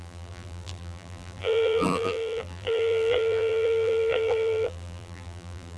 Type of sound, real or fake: fake